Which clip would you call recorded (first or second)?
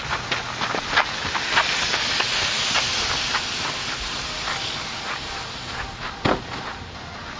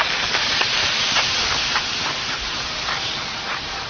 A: first